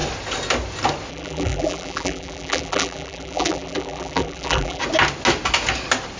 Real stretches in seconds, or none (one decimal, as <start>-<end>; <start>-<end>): 0.0-1.1; 4.8-6.2